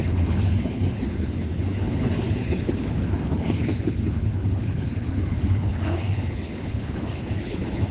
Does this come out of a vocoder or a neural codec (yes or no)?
yes